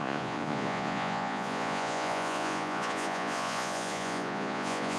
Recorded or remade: remade